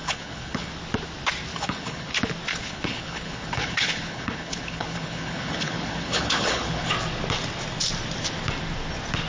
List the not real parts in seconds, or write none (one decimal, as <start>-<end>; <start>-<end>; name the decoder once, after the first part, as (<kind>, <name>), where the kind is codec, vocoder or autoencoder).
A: 0.0-0.7 (codec, HILCodec); 1.5-2.1; 2.5-6.9